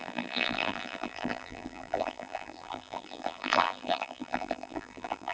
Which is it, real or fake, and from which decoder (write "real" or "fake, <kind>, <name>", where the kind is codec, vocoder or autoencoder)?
fake, vocoder, BigVGAN v2